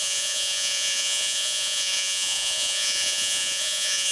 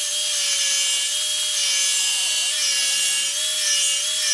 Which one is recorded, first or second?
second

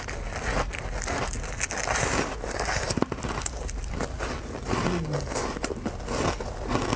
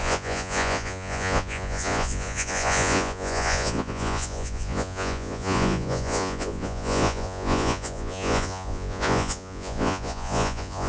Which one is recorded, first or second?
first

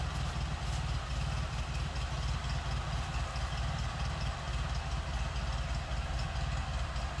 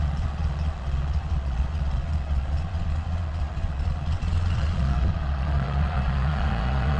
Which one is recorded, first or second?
first